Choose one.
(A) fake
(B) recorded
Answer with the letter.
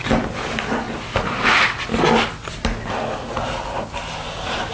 B